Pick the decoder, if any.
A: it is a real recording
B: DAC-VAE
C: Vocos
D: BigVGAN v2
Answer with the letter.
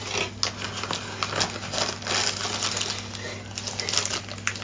A